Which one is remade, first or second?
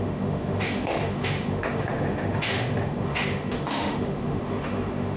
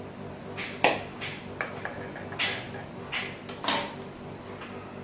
first